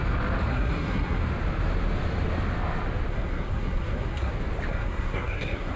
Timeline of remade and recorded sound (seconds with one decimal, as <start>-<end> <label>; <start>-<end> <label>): 0.0-0.5 recorded; 0.5-1.2 remade; 1.2-3.1 recorded; 3.1-4.3 remade; 4.3-4.7 recorded; 4.7-5.8 remade